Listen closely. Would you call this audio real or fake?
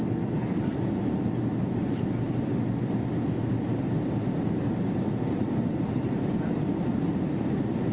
real